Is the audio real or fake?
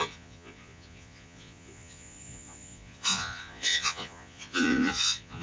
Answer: fake